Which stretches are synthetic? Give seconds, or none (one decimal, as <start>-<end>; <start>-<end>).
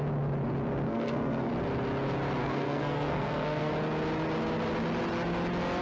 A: 0.9-1.5; 2.4-3.7